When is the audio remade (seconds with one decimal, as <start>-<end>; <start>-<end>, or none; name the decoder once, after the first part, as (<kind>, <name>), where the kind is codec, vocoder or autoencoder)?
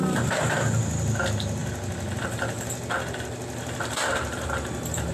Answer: none